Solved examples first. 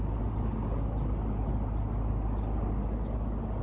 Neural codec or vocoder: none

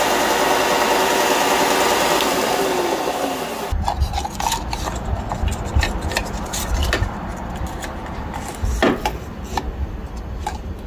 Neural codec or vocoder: none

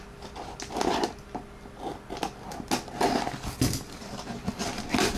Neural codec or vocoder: none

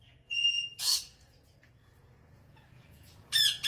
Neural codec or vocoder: vocoder, Vocos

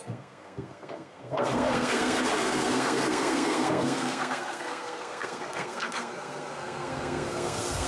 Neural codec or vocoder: codec, SNAC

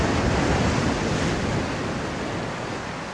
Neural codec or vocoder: none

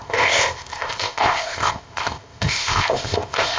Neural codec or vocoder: codec, ZipCodec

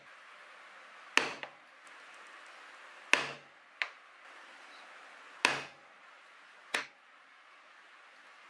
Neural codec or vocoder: none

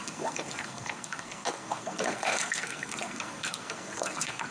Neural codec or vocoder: codec, SNAC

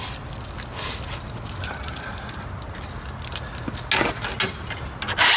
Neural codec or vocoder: none